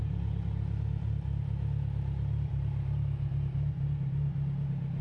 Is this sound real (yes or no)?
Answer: yes